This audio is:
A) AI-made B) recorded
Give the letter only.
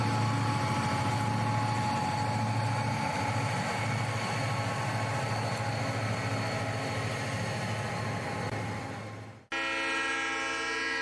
B